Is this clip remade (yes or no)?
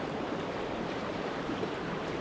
yes